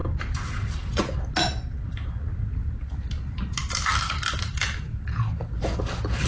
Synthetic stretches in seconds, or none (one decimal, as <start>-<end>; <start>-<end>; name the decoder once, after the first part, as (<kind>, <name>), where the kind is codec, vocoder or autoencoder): 0.0-2.1 (vocoder, BigVGAN v2); 3.9-5.8